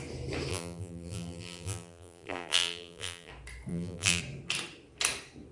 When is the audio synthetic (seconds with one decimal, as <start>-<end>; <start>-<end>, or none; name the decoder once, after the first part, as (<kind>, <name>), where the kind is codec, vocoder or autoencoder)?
0.5-3.3 (vocoder, BigVGAN v2); 3.7-4.2